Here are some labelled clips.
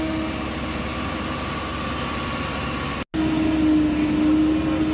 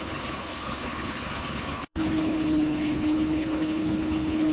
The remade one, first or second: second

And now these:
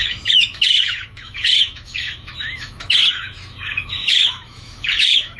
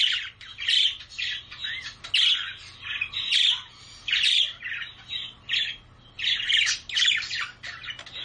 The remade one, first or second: first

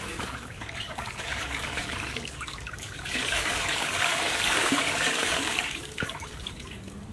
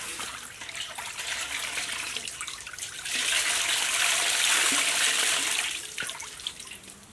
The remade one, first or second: first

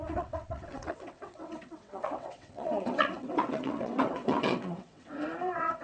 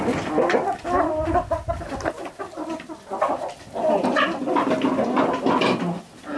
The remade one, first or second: first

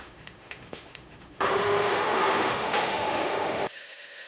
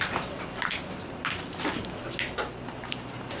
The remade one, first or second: first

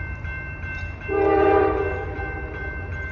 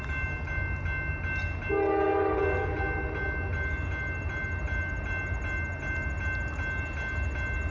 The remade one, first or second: first